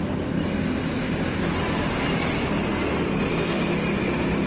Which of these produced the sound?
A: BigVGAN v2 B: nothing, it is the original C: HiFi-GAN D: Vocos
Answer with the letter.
B